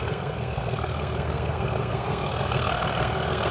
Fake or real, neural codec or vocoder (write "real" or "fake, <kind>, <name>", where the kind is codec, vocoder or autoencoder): fake, codec, SNAC